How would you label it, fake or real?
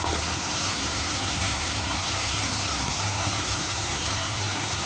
fake